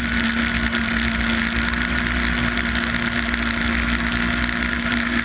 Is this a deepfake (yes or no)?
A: no